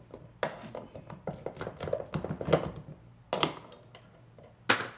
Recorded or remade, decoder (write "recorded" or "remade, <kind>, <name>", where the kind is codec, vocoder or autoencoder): recorded